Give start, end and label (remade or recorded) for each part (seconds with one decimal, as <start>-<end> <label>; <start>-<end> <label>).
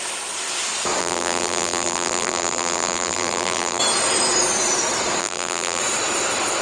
0.0-1.0 recorded; 1.0-3.8 remade; 3.8-5.2 recorded; 5.2-5.8 remade; 5.8-6.6 recorded